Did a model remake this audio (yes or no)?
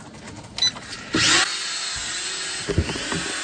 no